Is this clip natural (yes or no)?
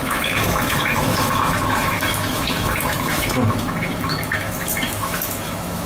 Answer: no